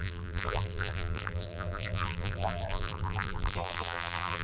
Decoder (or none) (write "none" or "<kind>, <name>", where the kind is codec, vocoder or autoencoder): vocoder, BigVGAN v2